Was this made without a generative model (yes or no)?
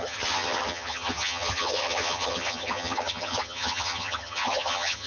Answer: no